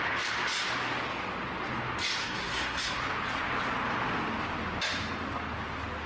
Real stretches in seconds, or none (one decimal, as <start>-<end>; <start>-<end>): 0.0-2.2; 3.0-6.1

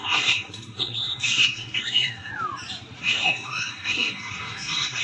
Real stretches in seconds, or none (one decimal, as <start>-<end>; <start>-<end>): 2.3-3.0

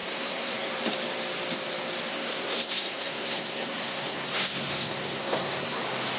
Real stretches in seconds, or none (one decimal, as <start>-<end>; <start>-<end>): 0.7-2.1; 5.8-6.2

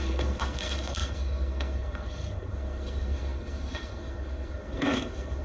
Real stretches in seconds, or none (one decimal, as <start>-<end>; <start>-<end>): none

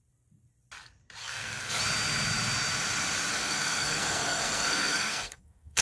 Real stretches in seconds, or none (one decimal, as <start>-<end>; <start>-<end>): 0.0-1.2; 1.8-3.3